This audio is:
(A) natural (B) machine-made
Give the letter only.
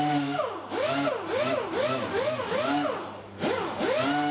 A